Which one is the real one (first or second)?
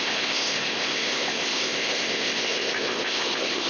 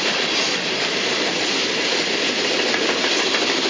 second